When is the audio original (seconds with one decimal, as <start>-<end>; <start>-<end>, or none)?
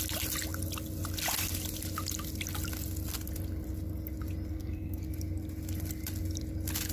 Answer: 0.0-4.5; 5.0-6.9